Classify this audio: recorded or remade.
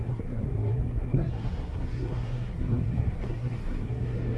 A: remade